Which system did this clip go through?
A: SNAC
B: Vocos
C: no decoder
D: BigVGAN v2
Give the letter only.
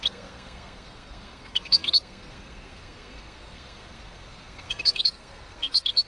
A